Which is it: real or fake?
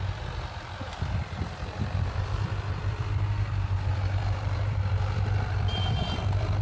fake